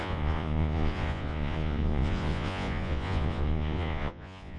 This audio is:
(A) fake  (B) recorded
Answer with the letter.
A